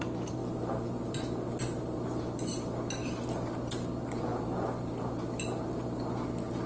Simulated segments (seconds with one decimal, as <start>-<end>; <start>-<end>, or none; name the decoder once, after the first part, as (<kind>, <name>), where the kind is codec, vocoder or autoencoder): none